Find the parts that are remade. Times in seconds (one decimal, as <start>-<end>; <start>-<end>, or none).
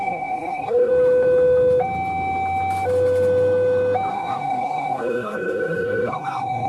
0.0-0.9; 4.1-6.7